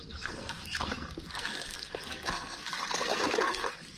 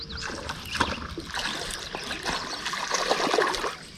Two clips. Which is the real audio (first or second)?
second